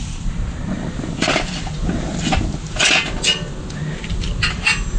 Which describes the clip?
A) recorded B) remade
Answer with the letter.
A